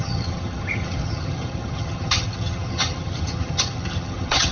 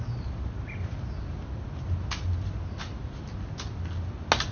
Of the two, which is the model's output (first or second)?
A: first